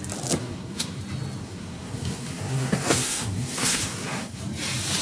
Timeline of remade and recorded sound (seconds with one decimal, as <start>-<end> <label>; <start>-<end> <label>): 0.0-0.4 recorded; 0.4-1.0 remade; 1.0-1.4 recorded; 1.4-4.4 remade; 4.4-5.0 recorded